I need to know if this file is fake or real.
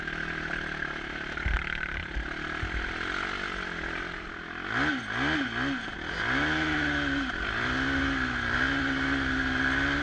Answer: real